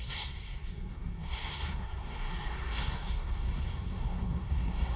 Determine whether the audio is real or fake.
fake